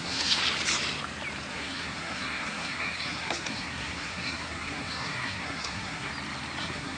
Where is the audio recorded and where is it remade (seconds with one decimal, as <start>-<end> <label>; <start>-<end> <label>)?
0.0-0.4 remade; 0.4-1.5 recorded; 1.5-6.1 remade; 6.1-6.6 recorded; 6.6-7.0 remade